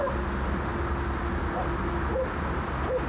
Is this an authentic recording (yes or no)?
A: yes